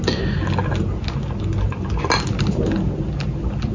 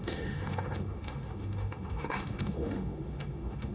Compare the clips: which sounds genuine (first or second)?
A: first